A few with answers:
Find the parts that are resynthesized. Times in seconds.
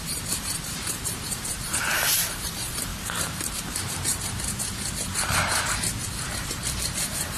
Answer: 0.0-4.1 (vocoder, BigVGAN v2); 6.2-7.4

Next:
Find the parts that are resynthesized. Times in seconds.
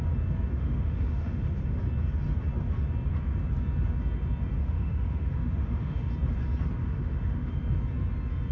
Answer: 0.5-1.8 (autoencoder, DAC-VAE); 4.6-6.1; 6.8-7.5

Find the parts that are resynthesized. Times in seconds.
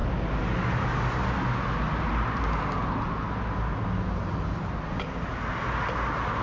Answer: none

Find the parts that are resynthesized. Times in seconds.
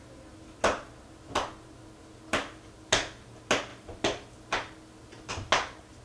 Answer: none